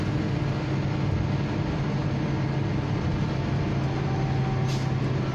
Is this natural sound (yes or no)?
yes